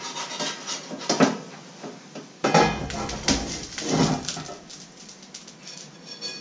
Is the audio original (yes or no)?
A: yes